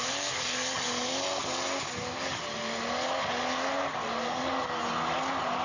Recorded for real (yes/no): yes